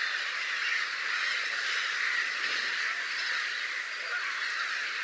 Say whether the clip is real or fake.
real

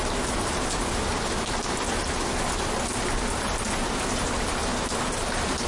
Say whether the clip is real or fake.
real